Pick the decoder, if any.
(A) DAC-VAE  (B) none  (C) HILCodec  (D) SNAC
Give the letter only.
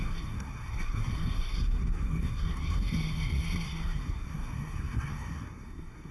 D